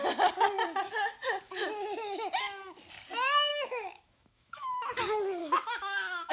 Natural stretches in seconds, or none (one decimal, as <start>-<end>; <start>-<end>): 0.0-3.5; 5.0-5.4